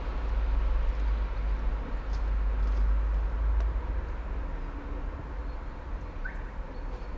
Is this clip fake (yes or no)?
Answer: no